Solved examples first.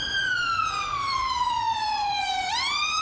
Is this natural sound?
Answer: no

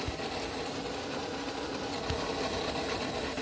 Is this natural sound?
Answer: yes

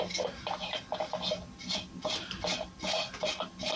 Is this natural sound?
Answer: yes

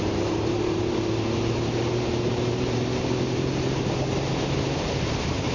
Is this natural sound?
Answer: no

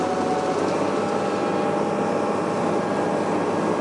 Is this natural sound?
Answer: yes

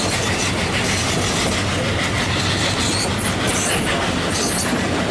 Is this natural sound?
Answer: yes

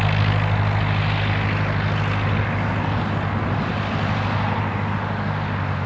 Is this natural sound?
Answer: yes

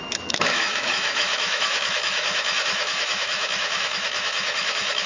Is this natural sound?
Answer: no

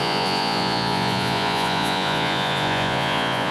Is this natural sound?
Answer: no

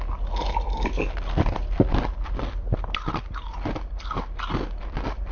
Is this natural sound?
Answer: yes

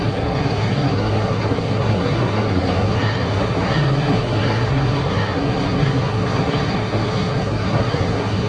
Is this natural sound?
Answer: no